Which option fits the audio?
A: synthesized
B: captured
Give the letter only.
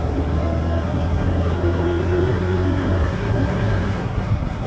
A